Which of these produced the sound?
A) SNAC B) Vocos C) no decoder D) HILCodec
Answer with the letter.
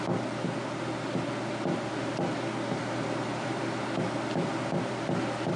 C